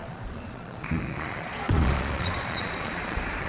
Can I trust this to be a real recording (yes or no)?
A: no